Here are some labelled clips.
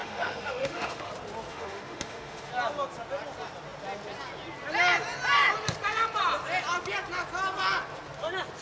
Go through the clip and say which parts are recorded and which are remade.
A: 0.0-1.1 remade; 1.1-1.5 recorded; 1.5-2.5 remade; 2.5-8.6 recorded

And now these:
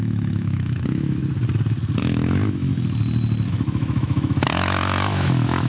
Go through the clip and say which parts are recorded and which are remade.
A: 0.0-1.2 remade; 1.2-2.0 recorded; 2.0-2.7 remade; 2.7-3.5 recorded; 3.5-5.7 remade

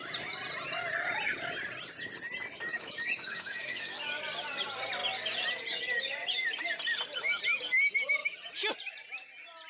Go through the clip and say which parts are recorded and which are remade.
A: 0.0-2.7 recorded; 2.7-4.2 remade; 4.2-9.7 recorded